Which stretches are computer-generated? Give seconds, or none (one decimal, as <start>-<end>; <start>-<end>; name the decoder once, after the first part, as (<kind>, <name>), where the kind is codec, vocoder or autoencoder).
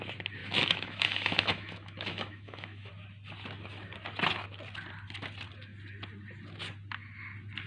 0.4-2.9 (autoencoder, DAC-VAE)